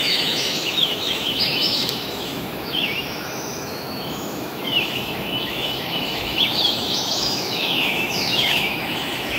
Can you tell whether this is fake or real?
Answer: fake